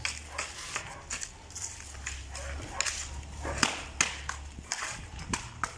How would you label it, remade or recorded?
recorded